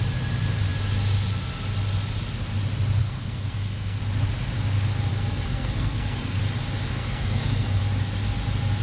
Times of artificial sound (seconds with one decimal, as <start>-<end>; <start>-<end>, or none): 3.0-4.0; 5.1-6.4; 7.0-7.8